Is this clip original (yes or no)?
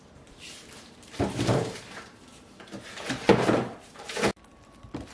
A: no